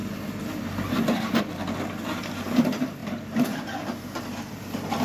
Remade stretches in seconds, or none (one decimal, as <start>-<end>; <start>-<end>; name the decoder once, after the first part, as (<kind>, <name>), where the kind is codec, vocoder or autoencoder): none